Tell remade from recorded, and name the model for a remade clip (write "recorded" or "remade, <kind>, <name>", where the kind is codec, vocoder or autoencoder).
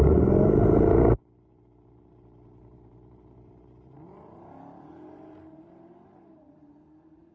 remade, vocoder, BigVGAN v2